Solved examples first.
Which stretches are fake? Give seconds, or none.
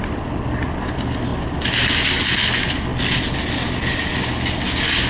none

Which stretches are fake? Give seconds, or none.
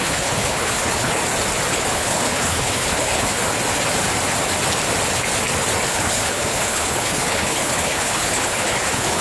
0.0-1.2 (codec, HILCodec); 1.7-3.4; 5.9-9.2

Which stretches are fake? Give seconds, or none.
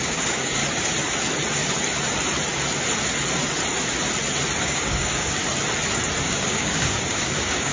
0.0-0.6 (codec, DAC); 4.6-5.4; 6.2-7.7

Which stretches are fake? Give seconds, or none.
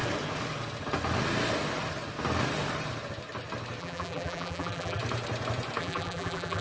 3.8-5.0 (vocoder, BigVGAN v2); 5.8-6.6